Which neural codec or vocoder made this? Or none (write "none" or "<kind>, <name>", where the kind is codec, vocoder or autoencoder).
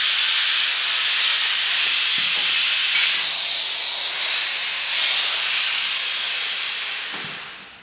none